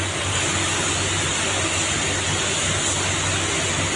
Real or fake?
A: real